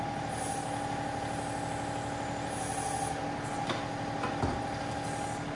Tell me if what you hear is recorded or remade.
recorded